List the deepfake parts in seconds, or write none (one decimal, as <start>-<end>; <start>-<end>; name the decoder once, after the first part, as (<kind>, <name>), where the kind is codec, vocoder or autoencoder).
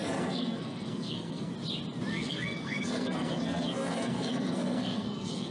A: 0.0-1.5 (codec, SNAC); 2.1-5.5